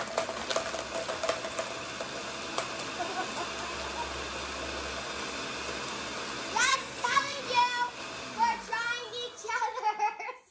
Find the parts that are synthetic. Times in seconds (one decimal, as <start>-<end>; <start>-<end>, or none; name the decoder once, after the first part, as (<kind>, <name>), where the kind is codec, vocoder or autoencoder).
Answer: 6.7-7.4 (codec, SNAC)